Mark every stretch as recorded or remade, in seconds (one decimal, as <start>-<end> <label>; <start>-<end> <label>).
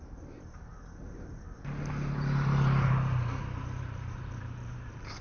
0.0-0.7 remade; 0.7-3.8 recorded; 3.8-5.2 remade